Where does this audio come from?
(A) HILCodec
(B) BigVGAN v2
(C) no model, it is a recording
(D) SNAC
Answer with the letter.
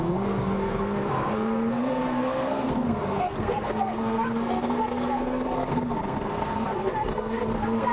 D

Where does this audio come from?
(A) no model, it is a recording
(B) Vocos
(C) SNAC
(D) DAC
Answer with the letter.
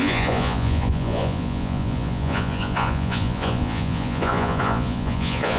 B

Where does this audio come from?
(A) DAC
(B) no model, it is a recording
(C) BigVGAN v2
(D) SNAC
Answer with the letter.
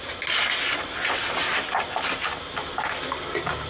B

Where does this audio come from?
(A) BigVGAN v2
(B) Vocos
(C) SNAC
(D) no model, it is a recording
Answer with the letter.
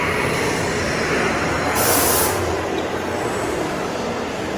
A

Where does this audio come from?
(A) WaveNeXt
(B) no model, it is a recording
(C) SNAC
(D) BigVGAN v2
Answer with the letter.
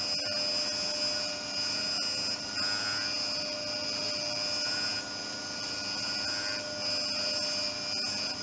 B